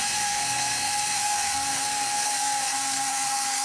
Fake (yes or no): yes